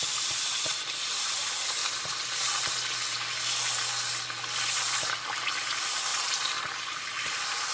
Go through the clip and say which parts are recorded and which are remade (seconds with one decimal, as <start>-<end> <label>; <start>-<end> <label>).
0.0-1.8 recorded; 1.8-2.6 remade; 2.6-7.7 recorded